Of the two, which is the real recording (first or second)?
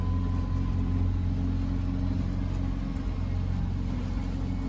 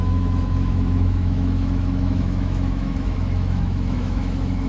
first